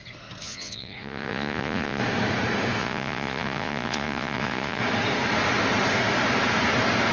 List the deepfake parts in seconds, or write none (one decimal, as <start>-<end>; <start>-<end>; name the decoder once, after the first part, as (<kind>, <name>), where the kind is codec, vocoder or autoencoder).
0.4-2.0 (vocoder, Vocos); 2.8-4.8

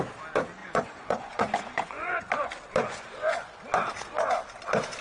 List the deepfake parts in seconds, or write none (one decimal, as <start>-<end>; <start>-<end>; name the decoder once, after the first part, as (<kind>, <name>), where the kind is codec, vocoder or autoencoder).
0.6-2.3 (vocoder, Vocos); 2.8-3.6